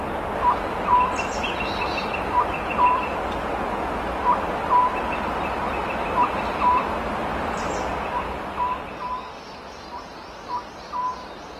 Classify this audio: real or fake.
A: real